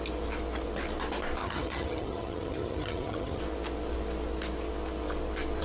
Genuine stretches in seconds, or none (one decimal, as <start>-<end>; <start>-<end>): 0.0-1.4; 3.4-5.6